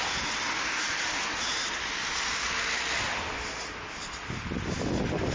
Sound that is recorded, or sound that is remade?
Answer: recorded